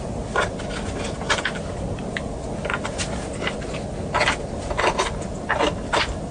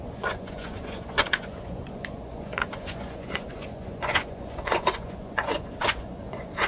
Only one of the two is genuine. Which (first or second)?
first